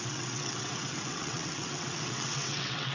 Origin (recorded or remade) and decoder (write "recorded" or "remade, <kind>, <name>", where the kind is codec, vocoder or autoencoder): remade, vocoder, WaveNeXt